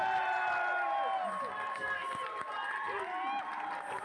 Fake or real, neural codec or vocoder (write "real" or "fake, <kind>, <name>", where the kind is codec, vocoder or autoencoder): real